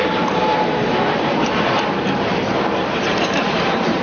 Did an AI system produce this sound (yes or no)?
yes